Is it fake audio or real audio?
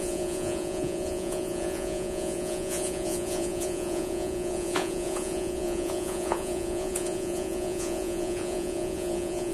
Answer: fake